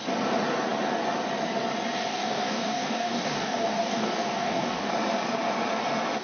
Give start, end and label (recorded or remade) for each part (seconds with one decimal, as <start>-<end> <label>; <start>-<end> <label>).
0.0-2.1 recorded; 2.1-4.9 remade; 4.9-6.2 recorded